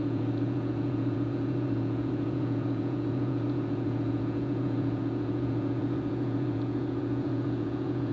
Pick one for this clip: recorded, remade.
remade